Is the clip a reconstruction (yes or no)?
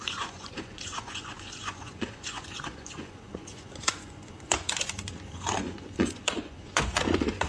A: yes